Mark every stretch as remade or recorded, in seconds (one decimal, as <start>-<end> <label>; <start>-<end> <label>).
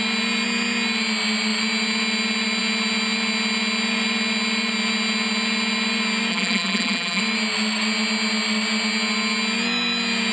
0.0-6.3 recorded; 6.3-7.2 remade; 7.2-10.3 recorded